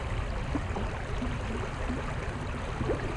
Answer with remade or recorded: remade